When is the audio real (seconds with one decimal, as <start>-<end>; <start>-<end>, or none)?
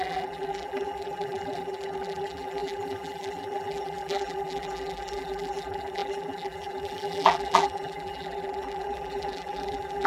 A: none